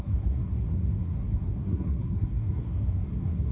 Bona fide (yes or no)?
no